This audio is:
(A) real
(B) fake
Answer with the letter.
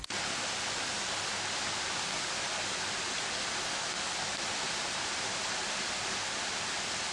A